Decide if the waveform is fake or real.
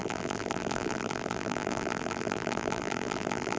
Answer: fake